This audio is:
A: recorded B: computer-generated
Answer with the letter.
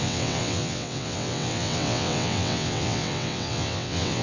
B